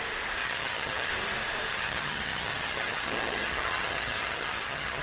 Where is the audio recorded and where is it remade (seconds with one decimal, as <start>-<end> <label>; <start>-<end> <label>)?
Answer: 0.0-0.4 recorded; 0.4-1.1 remade; 1.1-1.7 recorded; 1.7-5.0 remade